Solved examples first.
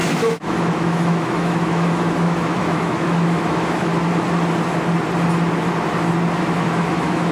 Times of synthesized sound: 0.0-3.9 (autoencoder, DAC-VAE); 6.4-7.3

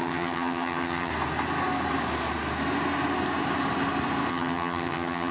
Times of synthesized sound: 0.0-1.1 (vocoder, HiFi-GAN); 4.3-5.3

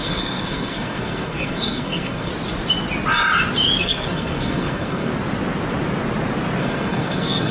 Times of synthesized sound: 0.0-2.3 (codec, SNAC); 3.8-5.1; 6.6-7.5

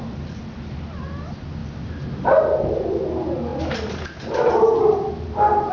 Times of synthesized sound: none